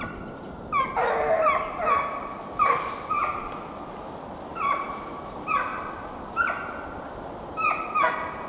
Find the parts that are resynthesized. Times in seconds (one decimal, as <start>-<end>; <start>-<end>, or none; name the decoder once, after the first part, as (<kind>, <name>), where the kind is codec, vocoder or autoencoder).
none